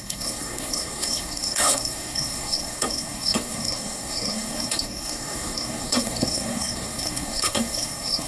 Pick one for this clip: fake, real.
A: fake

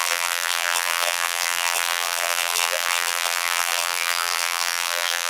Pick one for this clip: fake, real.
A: fake